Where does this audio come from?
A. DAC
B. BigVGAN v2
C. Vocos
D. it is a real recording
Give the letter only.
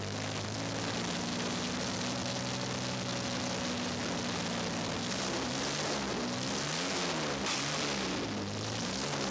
D